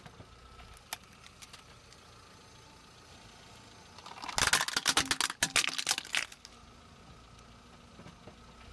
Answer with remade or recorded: recorded